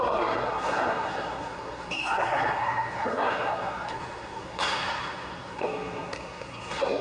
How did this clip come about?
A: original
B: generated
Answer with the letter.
B